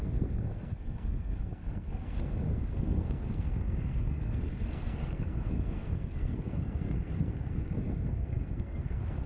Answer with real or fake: fake